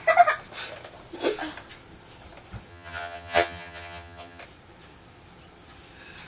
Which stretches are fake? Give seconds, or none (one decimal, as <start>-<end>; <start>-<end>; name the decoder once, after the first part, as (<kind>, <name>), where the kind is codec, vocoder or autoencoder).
2.7-4.4 (vocoder, HiFi-GAN)